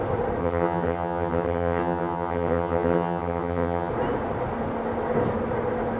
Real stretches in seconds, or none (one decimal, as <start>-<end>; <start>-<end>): 0.0-0.4; 3.9-6.0